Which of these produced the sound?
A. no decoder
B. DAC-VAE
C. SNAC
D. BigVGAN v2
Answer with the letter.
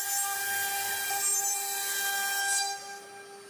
A